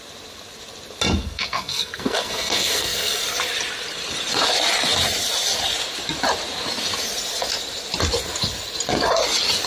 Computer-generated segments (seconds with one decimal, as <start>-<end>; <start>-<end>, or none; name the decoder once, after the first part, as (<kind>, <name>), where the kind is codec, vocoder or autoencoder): 1.2-3.2 (codec, SNAC)